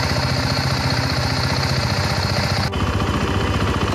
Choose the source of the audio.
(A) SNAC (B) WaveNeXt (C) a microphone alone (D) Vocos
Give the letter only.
C